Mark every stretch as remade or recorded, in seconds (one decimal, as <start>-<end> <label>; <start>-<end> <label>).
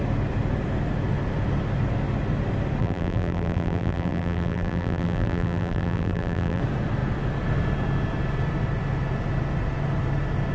0.0-2.8 recorded; 2.8-6.6 remade; 6.6-10.5 recorded